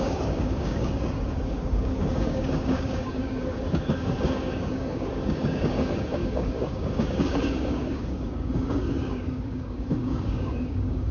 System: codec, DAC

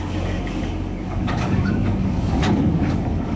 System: codec, DAC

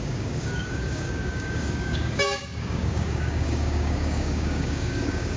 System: codec, DAC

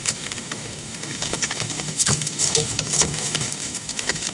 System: codec, DAC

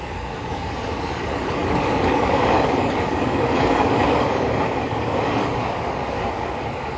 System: codec, DAC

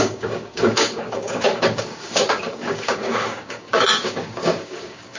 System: codec, DAC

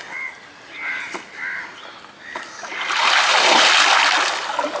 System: none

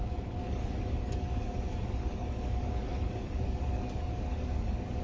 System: codec, DAC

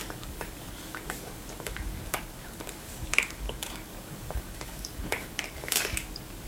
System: codec, DAC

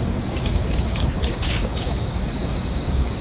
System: codec, DAC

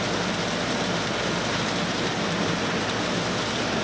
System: none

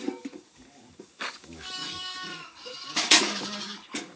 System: codec, DAC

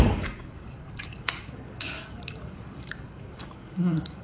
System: codec, DAC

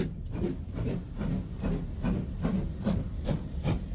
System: none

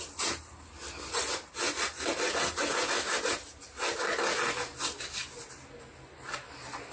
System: none